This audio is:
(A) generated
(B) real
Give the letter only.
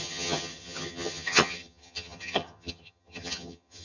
A